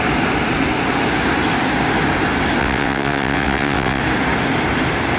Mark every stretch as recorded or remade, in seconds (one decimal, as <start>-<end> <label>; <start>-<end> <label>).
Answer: 0.0-2.6 recorded; 2.6-4.0 remade; 4.0-5.2 recorded